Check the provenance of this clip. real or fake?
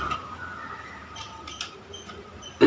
real